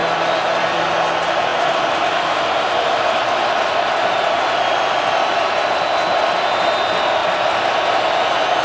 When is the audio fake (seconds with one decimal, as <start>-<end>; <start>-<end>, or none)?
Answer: 1.5-6.6; 7.2-8.0

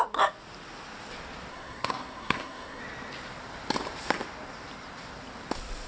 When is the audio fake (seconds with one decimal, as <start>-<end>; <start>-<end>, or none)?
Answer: 1.5-2.8

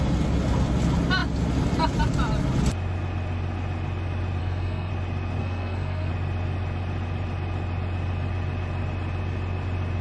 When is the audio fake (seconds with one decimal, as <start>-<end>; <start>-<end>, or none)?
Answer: 4.4-4.9; 5.4-6.1

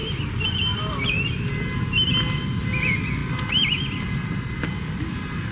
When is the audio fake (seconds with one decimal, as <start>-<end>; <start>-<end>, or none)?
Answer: none

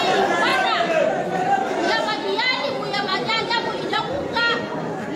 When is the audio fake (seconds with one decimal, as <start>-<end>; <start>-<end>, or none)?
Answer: 0.5-1.9; 3.1-4.1

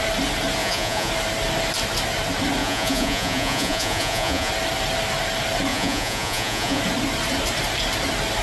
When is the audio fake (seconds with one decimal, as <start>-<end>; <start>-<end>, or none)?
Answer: 0.6-1.1; 2.6-4.5; 5.7-6.8

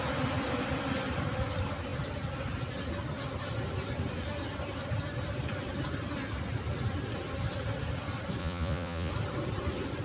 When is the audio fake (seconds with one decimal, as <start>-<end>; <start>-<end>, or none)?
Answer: 8.4-9.1